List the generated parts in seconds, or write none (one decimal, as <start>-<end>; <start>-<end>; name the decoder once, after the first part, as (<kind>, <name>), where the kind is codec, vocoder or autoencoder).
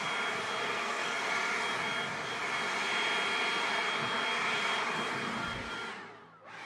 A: 0.6-1.3 (codec, SNAC)